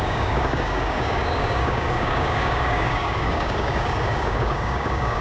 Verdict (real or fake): fake